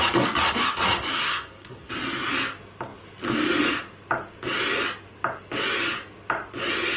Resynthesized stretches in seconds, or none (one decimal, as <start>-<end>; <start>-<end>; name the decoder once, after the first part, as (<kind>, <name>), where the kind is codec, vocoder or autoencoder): 1.1-1.9 (codec, SNAC)